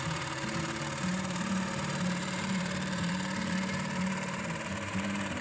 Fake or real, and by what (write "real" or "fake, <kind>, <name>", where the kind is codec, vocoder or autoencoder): fake, vocoder, BigVGAN v2